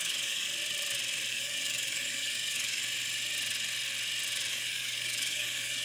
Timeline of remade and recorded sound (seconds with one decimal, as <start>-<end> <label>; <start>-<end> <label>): 0.0-0.5 remade; 0.5-1.3 recorded; 1.3-2.8 remade; 2.8-4.5 recorded; 4.5-5.8 remade